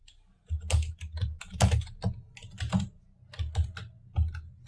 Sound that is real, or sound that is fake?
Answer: real